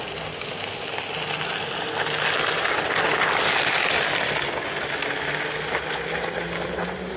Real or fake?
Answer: real